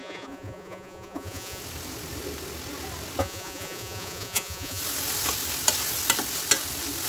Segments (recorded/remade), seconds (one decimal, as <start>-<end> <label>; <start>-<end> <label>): 0.0-1.6 remade; 1.6-3.2 recorded; 3.2-4.8 remade; 4.8-7.1 recorded